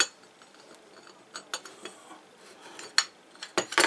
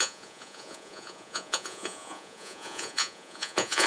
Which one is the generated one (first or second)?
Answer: second